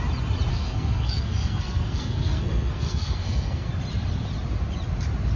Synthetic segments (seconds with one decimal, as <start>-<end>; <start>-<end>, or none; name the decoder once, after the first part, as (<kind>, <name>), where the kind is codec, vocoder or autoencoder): 0.5-3.7 (codec, SNAC)